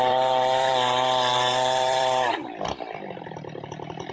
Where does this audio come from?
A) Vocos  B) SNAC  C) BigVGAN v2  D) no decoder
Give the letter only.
C